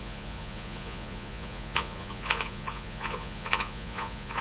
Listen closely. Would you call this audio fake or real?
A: fake